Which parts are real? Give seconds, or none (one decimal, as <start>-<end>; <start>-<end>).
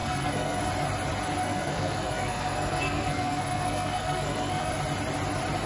0.7-1.4; 4.8-5.7